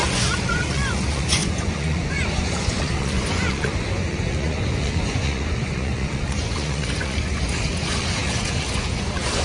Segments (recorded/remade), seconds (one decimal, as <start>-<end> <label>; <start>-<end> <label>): 0.0-9.4 remade